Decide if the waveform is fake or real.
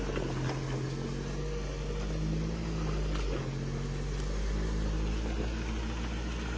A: real